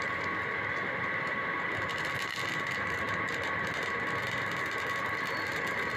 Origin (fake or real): real